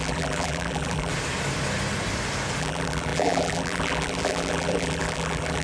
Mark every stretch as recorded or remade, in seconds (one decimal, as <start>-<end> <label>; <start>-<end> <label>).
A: 0.0-1.1 remade; 1.1-2.6 recorded; 2.6-5.6 remade